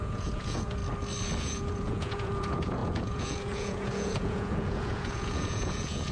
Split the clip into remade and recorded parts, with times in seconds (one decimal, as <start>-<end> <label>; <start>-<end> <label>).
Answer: 0.0-0.8 remade; 0.8-1.4 recorded; 1.4-6.1 remade